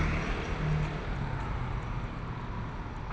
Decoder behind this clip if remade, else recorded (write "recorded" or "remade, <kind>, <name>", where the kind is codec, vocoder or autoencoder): recorded